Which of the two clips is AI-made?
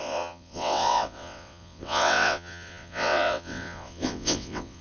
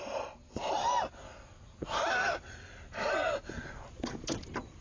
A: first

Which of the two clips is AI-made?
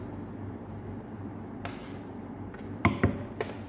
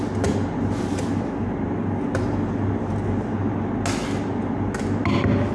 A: first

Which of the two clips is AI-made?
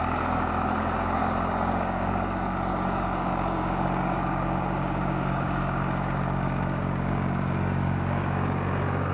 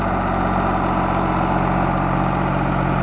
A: first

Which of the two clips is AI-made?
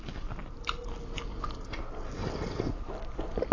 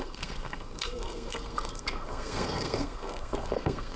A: second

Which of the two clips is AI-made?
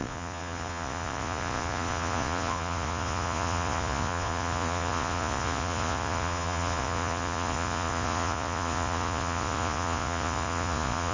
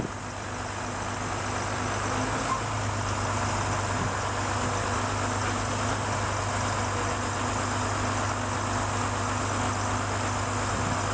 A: first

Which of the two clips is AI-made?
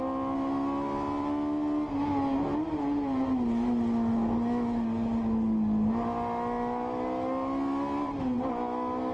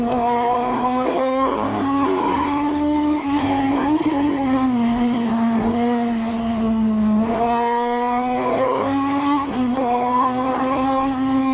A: second